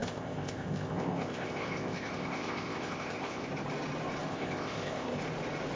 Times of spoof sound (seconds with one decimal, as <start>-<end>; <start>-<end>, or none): 0.0-3.5; 4.3-5.2